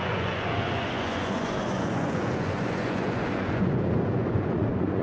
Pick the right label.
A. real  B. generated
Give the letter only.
B